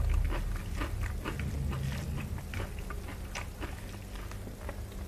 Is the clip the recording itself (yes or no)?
yes